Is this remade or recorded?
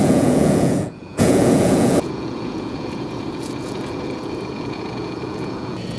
remade